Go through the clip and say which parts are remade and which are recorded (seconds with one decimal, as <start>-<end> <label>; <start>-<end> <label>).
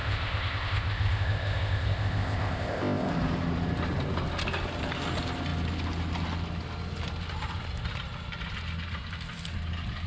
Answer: 0.0-3.1 remade; 3.1-10.1 recorded